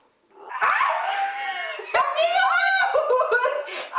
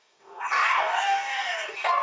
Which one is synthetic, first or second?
second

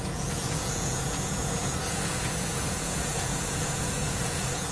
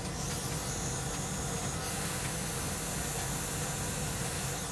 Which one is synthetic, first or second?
first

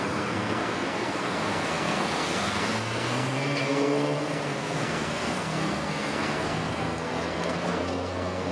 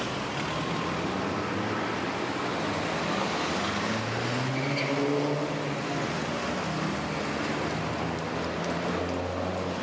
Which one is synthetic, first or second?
first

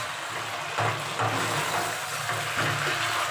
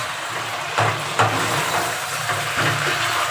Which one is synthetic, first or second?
second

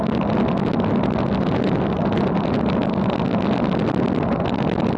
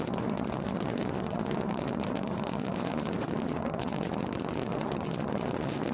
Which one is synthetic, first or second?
second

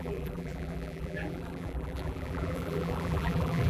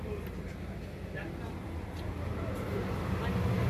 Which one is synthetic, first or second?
first